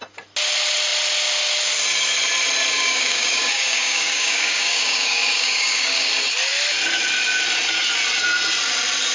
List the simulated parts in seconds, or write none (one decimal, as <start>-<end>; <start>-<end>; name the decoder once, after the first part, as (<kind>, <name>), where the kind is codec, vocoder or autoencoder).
2.7-6.1 (codec, DAC)